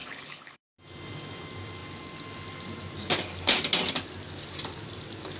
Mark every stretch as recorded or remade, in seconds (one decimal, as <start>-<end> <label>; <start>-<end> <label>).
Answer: 0.0-0.6 remade; 0.6-5.4 recorded